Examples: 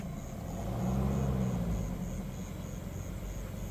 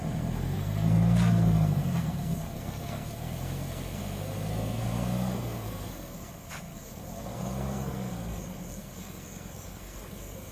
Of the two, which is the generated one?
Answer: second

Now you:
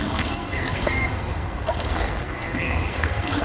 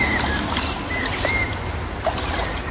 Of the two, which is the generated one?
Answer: first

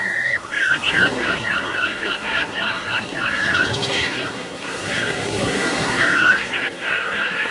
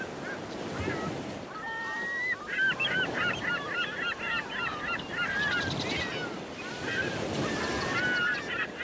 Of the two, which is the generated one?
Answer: first